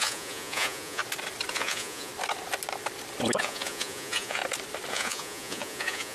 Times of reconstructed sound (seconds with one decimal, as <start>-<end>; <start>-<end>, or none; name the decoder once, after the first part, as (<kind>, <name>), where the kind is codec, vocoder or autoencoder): 0.0-1.0 (vocoder, Vocos); 1.5-2.1; 3.4-4.4; 4.9-6.1